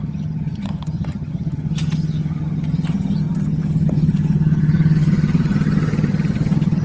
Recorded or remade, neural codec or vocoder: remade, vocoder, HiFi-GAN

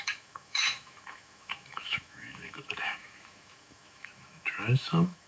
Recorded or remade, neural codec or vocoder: remade, autoencoder, DAC-VAE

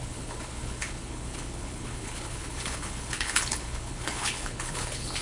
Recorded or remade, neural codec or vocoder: remade, codec, HILCodec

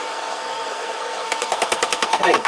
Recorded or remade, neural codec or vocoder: remade, codec, SNAC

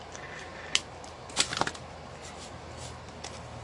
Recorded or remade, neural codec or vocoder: recorded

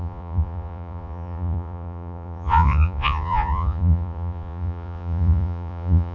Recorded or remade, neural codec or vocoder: remade, vocoder, Vocos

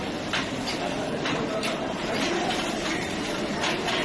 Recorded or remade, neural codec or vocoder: remade, vocoder, BigVGAN v2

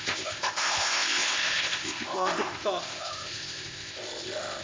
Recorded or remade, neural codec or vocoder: remade, codec, ZipCodec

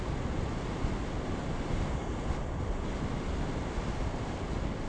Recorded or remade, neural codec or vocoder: recorded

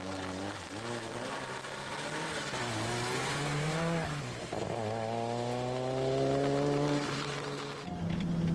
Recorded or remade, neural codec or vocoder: recorded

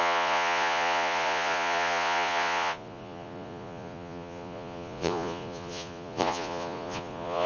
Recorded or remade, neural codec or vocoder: remade, vocoder, Vocos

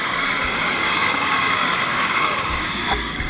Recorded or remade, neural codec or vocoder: remade, codec, DAC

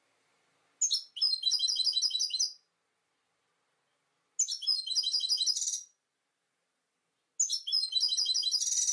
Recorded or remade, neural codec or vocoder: recorded